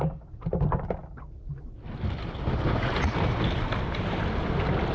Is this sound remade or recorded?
recorded